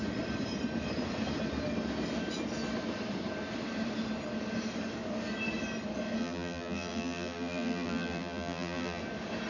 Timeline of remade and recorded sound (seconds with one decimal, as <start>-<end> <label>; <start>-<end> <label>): 0.0-6.2 recorded; 6.2-9.0 remade; 9.0-9.5 recorded